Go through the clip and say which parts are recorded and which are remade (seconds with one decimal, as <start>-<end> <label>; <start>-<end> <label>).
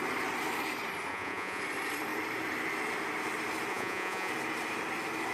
0.0-1.1 recorded; 1.1-1.6 remade; 1.6-3.7 recorded; 3.7-4.3 remade; 4.3-5.3 recorded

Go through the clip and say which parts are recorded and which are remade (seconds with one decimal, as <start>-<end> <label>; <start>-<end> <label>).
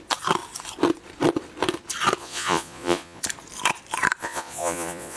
0.0-2.2 recorded; 2.2-3.2 remade; 3.2-4.2 recorded; 4.2-5.2 remade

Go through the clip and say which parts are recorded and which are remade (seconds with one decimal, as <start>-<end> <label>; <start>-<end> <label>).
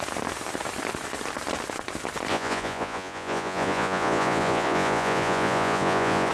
0.0-2.3 recorded; 2.3-6.3 remade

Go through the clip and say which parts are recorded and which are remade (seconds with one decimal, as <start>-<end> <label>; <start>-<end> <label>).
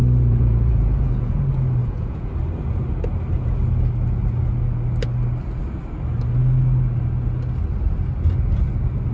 0.0-1.4 remade; 1.4-1.8 recorded; 1.8-2.3 remade; 2.3-9.1 recorded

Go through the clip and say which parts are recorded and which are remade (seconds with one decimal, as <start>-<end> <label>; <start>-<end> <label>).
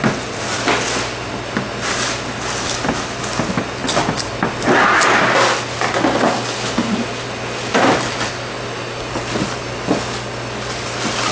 0.0-11.3 recorded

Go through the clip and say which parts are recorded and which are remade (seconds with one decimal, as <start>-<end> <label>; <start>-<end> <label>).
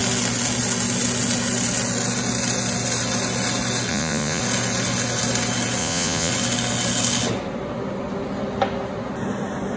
0.0-3.9 recorded; 3.9-4.4 remade; 4.4-5.8 recorded; 5.8-6.3 remade; 6.3-9.8 recorded